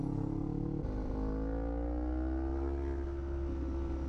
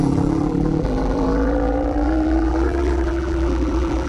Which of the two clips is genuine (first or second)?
first